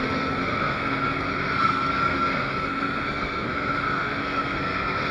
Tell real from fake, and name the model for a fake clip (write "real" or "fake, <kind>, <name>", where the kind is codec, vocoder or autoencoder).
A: fake, codec, SNAC